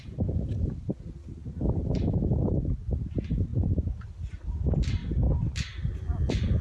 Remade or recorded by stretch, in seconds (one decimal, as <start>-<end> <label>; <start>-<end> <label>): 0.0-6.6 recorded